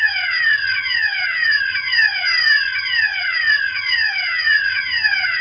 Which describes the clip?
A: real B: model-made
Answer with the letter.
B